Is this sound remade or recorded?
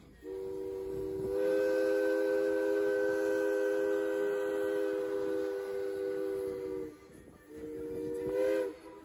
recorded